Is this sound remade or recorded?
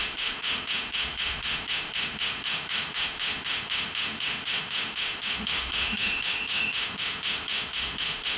remade